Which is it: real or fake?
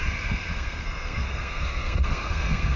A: fake